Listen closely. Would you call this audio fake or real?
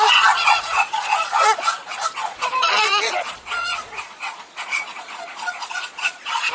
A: fake